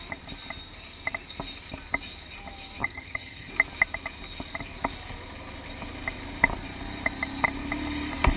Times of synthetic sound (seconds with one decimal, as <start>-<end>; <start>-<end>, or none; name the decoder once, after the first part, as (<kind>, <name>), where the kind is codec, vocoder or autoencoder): 2.8-3.5 (vocoder, HiFi-GAN)